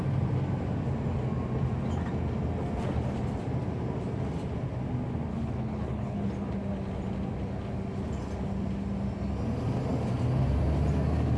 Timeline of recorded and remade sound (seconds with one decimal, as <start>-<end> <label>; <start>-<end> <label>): 0.0-5.3 recorded; 5.3-6.3 remade; 6.3-11.4 recorded